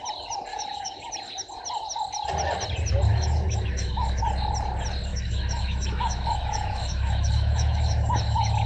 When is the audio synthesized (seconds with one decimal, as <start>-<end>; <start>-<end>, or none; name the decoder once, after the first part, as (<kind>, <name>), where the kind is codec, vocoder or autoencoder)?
0.5-1.1 (autoencoder, DAC-VAE); 3.1-4.2; 5.1-8.7